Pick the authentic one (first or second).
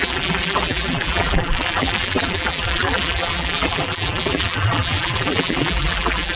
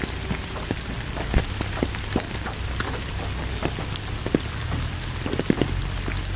second